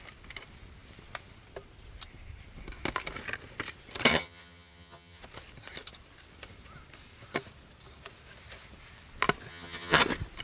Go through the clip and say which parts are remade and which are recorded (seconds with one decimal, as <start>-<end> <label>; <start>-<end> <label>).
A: 0.0-4.1 recorded; 4.1-5.2 remade; 5.2-9.5 recorded; 9.5-10.0 remade; 10.0-10.4 recorded